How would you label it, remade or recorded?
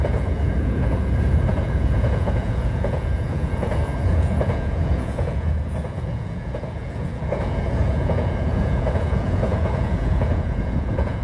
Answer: remade